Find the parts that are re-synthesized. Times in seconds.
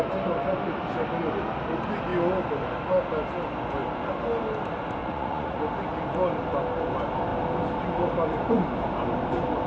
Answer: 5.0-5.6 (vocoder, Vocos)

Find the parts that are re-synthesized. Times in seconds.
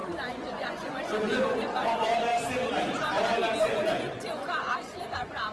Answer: 0.0-2.3 (vocoder, Vocos); 3.6-5.5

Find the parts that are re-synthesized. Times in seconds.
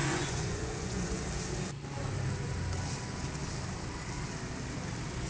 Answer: 0.0-1.2 (vocoder, Vocos)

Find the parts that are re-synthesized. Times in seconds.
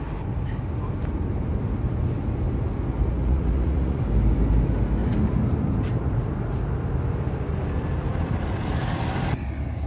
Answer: 3.1-4.0 (vocoder, Vocos)